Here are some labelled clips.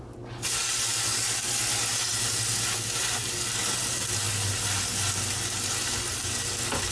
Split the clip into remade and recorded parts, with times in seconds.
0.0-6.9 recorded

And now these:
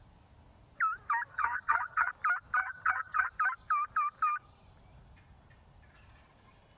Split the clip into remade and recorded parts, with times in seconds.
0.0-1.3 recorded; 1.3-2.1 remade; 2.1-2.6 recorded; 2.6-3.3 remade; 3.3-6.8 recorded

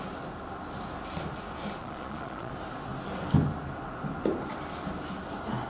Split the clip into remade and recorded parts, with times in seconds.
0.0-1.8 recorded; 1.8-2.5 remade; 2.5-5.7 recorded